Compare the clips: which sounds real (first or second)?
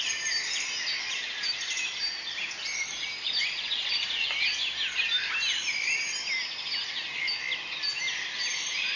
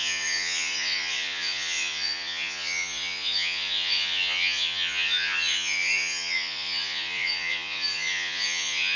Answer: first